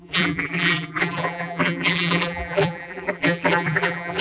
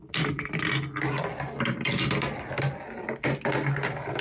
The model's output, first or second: first